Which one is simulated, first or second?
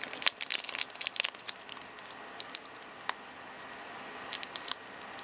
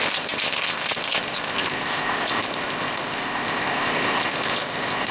second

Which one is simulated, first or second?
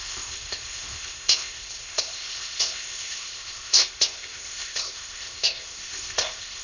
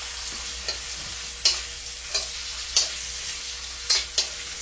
first